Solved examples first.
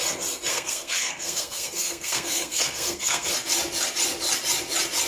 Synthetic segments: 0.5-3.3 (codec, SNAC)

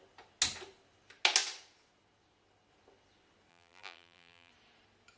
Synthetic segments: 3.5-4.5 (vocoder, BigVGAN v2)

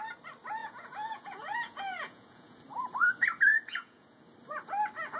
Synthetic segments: 0.6-2.6 (vocoder, Vocos); 3.5-4.2